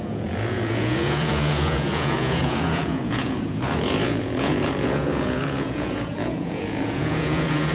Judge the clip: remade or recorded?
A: remade